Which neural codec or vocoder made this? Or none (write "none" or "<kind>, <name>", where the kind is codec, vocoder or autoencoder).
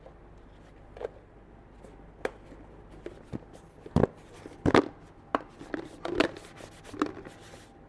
none